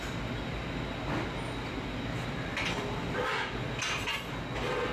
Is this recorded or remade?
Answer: recorded